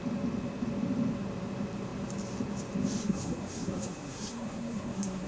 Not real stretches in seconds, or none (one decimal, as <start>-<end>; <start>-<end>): 3.0-5.3